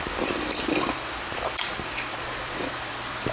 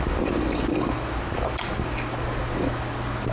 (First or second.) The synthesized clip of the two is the first